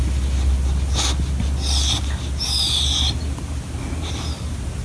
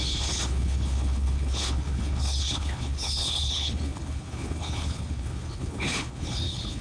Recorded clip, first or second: first